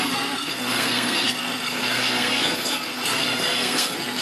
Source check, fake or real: fake